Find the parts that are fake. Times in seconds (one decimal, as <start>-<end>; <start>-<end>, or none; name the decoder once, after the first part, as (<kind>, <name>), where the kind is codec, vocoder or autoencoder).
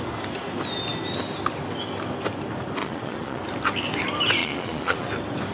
2.8-3.4 (vocoder, Vocos); 4.4-5.1